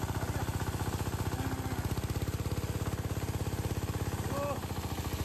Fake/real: real